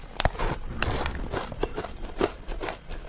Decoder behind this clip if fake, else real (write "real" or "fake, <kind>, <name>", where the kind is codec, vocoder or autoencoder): real